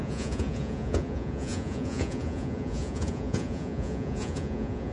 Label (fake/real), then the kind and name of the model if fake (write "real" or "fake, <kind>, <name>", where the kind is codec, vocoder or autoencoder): fake, vocoder, Vocos